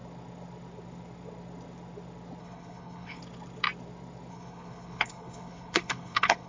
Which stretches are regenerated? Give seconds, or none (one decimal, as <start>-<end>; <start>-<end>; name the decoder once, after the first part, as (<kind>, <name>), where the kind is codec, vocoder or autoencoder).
2.4-3.2 (codec, HILCodec); 4.3-6.5